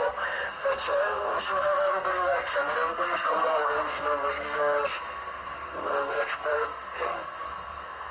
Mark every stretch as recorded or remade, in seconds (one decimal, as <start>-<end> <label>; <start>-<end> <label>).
0.0-8.1 remade